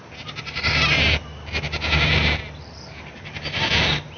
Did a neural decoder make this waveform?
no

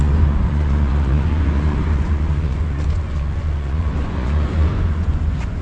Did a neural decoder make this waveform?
yes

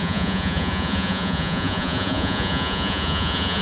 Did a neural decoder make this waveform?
yes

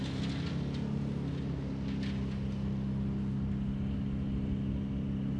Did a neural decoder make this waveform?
no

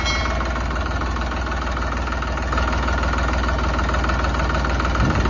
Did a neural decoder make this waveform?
no